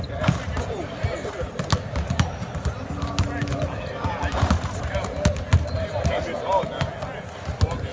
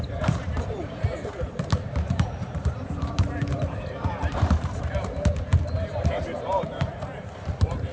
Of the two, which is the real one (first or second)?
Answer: first